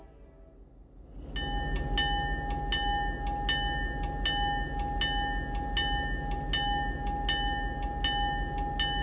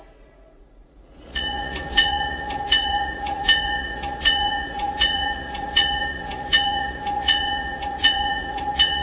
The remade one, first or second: second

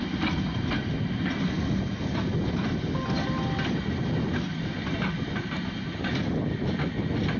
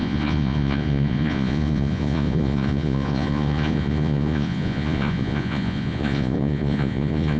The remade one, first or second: second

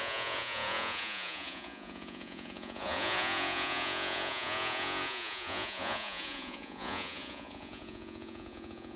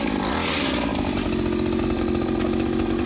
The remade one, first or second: first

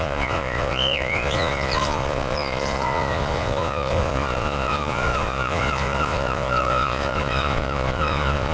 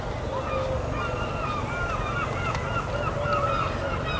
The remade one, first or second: first